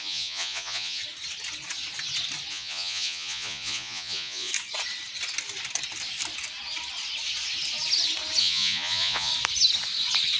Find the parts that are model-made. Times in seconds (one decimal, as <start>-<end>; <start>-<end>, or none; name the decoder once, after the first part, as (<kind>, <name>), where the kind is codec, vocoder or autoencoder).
0.0-1.0 (vocoder, Vocos); 2.5-4.5; 8.4-9.3